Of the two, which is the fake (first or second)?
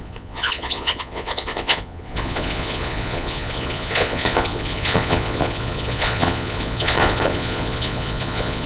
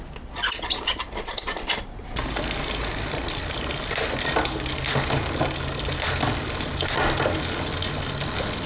first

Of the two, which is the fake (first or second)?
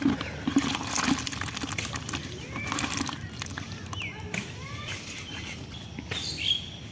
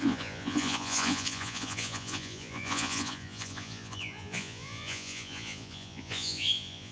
second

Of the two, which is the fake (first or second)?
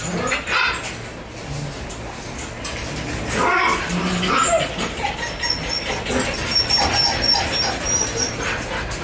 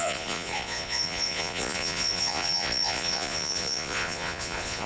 second